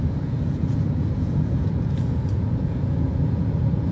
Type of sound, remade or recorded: remade